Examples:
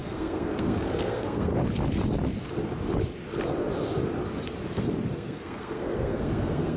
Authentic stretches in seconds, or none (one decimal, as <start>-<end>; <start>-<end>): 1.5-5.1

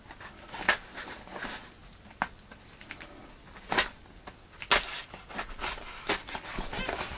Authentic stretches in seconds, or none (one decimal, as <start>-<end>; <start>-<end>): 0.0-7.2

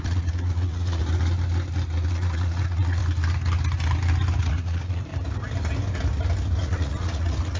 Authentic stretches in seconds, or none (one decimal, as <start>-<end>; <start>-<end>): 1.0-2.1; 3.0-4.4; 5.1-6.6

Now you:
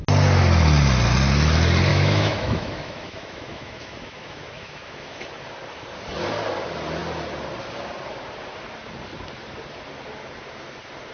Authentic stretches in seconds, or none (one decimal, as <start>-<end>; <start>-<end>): 0.0-1.9; 5.2-11.1

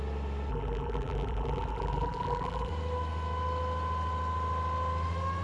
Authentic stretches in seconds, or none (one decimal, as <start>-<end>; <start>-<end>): 0.0-0.5; 2.7-5.4

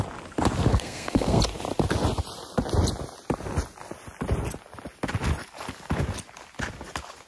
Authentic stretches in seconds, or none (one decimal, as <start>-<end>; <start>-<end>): 0.0-0.7; 1.4-7.3

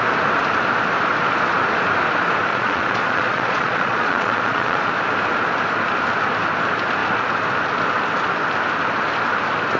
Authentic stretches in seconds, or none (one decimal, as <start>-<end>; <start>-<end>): 0.0-2.5; 4.9-9.8

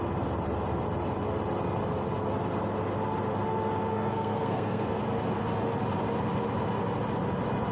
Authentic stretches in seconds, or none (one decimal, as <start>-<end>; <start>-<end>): 0.0-3.9; 5.0-7.7